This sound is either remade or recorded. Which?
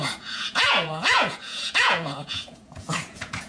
remade